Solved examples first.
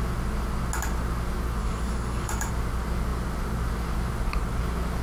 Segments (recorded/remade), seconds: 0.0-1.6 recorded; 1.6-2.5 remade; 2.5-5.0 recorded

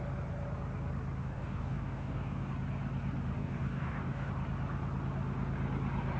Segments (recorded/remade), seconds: 0.0-1.2 recorded; 1.2-2.5 remade; 2.5-3.4 recorded; 3.4-4.3 remade; 4.3-6.2 recorded

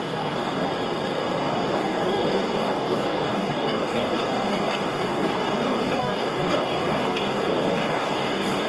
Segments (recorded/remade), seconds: 0.0-0.7 remade; 0.7-1.4 recorded; 1.4-8.7 remade

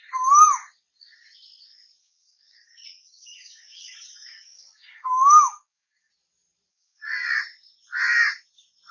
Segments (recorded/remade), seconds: 0.0-2.0 recorded; 2.0-6.1 remade; 6.1-6.7 recorded; 6.7-7.4 remade; 7.4-8.9 recorded

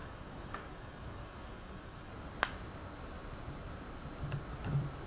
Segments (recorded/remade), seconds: 0.0-2.1 remade; 2.1-5.1 recorded

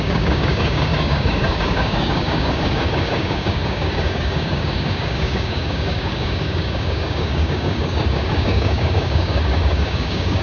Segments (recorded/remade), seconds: 0.0-10.4 remade

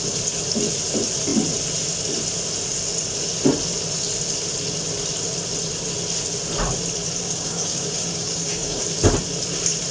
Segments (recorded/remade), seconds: 0.0-7.2 recorded; 7.2-8.8 remade; 8.8-9.9 recorded

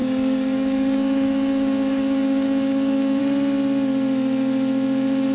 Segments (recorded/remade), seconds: 0.0-3.2 remade; 3.2-5.3 recorded